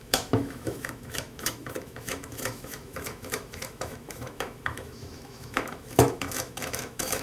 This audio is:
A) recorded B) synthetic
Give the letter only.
B